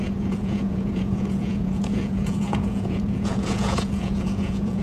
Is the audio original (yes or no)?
no